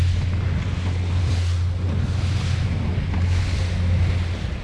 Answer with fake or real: real